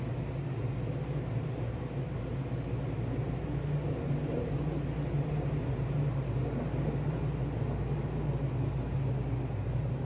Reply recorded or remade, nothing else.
recorded